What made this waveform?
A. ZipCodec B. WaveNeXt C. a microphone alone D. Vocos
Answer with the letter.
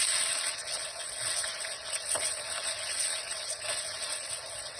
B